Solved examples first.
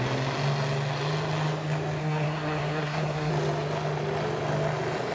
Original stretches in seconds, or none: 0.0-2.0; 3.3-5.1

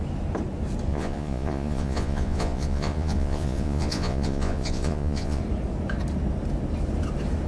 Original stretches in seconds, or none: 0.0-0.9; 5.4-7.5

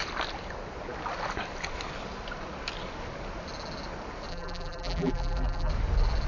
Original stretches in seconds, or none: 0.0-4.3; 5.7-6.3